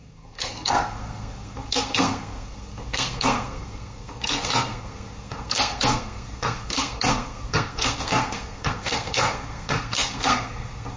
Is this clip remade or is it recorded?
remade